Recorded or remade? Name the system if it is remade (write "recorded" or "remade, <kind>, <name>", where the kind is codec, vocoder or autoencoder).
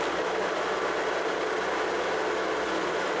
recorded